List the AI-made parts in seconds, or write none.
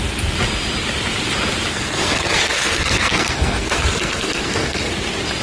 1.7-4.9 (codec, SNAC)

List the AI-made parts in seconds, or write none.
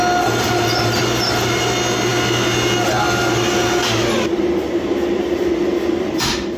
none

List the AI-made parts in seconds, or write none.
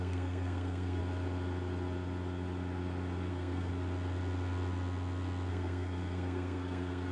0.0-1.0 (codec, SNAC); 3.3-3.7; 5.5-7.1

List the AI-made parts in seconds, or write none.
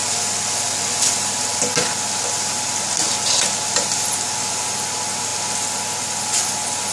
0.0-4.1 (vocoder, BigVGAN v2)